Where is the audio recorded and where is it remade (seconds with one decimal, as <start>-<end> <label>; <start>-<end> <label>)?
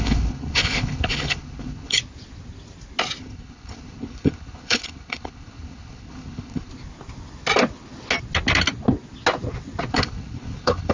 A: 0.0-2.0 remade; 2.0-3.2 recorded; 3.2-6.7 remade; 6.7-9.9 recorded; 9.9-10.9 remade